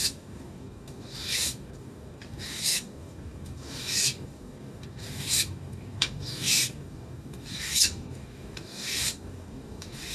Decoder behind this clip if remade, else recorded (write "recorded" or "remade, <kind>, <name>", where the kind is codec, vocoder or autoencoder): remade, codec, DAC